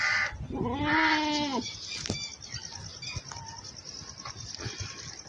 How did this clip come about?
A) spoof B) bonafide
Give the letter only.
B